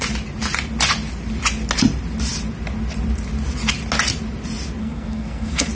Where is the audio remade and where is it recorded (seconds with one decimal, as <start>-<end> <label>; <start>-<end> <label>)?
0.0-4.8 recorded; 4.8-5.7 remade